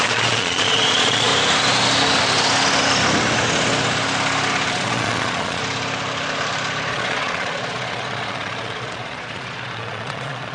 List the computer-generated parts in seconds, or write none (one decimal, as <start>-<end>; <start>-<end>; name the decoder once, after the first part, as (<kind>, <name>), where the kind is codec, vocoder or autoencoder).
0.0-1.3 (vocoder, Vocos); 4.7-5.6; 6.9-10.5